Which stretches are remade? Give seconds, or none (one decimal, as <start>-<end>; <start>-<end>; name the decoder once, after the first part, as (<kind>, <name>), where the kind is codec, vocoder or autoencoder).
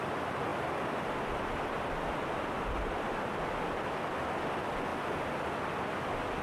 none